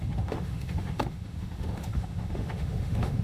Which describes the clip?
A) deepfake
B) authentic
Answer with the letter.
A